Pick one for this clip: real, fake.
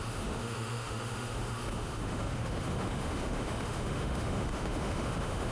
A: fake